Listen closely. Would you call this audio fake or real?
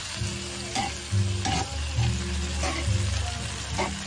real